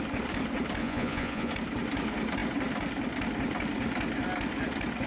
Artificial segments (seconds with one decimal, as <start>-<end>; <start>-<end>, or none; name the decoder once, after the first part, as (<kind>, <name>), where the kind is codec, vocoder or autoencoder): 0.8-1.5 (vocoder, Vocos)